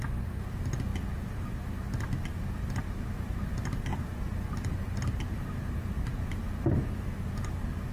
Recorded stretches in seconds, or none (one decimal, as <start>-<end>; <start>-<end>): 0.0-0.9; 3.2-3.9; 6.4-7.9